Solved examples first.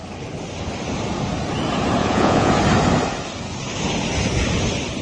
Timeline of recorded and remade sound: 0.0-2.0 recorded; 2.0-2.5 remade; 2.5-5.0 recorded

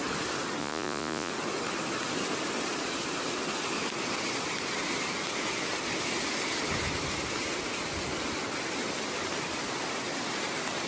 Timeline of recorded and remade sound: 0.0-0.6 recorded; 0.6-1.3 remade; 1.3-10.9 recorded

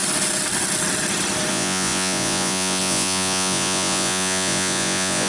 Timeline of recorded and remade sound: 0.0-1.5 recorded; 1.5-5.3 remade

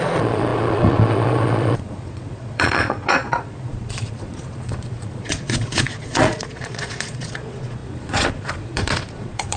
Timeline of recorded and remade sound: 0.0-9.6 remade

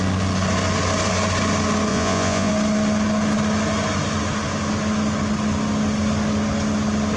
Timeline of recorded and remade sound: 0.0-1.9 recorded; 1.9-2.5 remade; 2.5-7.2 recorded